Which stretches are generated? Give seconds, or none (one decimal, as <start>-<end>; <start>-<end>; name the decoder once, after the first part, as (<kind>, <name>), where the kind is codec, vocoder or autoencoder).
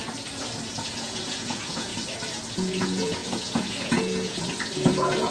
0.8-1.9 (vocoder, Vocos); 2.5-5.3